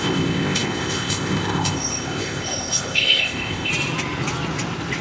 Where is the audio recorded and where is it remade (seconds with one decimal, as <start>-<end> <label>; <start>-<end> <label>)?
0.0-3.7 remade; 3.7-5.0 recorded